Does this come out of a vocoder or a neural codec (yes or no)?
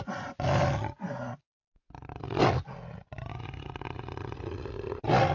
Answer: no